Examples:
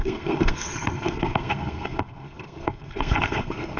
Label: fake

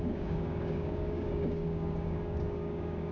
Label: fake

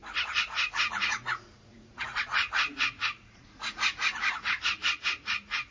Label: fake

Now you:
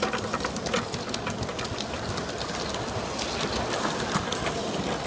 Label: real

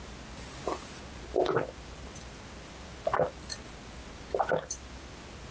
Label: real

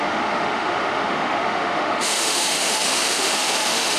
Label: fake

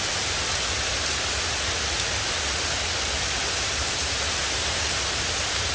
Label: real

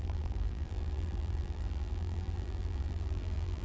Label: fake